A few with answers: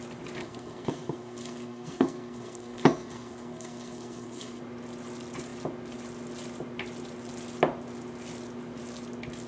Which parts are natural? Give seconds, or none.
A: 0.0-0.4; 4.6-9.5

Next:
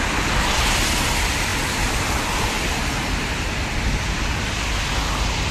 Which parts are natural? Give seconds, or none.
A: 0.0-5.5